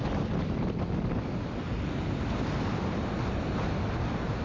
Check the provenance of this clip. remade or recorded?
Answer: recorded